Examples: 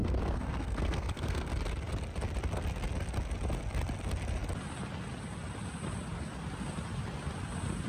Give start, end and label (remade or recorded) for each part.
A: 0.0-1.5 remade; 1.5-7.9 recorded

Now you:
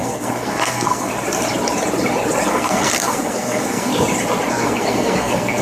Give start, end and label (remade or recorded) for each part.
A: 0.0-1.1 remade; 1.1-2.5 recorded; 2.5-3.9 remade; 3.9-4.5 recorded; 4.5-5.6 remade

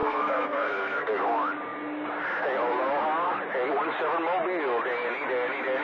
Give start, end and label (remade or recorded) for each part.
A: 0.0-1.1 remade; 1.1-5.8 recorded